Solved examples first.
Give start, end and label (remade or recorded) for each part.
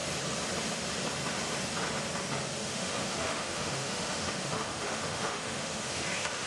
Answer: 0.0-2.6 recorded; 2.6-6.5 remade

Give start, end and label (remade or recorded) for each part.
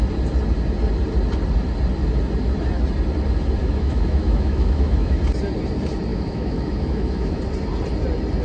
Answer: 0.0-3.6 recorded; 3.6-5.2 remade; 5.2-6.1 recorded; 6.1-7.4 remade; 7.4-8.4 recorded